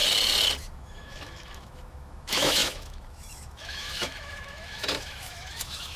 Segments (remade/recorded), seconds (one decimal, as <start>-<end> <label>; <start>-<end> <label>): 0.0-0.6 recorded; 0.6-6.0 remade